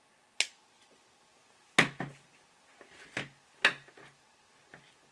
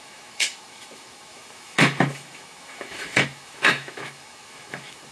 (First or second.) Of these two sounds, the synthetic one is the second